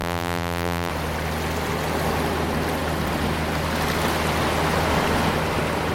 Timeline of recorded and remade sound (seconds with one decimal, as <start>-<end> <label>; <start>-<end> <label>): 0.0-0.9 remade; 0.9-5.9 recorded